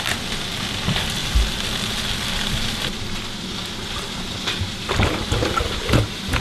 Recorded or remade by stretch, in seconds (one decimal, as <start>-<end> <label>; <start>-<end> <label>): 0.0-6.4 recorded